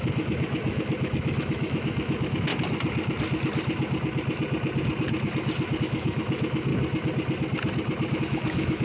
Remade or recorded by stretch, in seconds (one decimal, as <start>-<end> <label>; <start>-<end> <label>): 0.0-2.5 remade; 2.5-5.8 recorded; 5.8-6.7 remade; 6.7-8.2 recorded; 8.2-8.8 remade